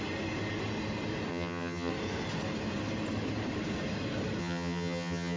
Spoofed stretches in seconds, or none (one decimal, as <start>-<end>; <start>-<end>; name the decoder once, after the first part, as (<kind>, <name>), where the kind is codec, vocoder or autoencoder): 1.3-1.9 (vocoder, HiFi-GAN); 4.4-5.4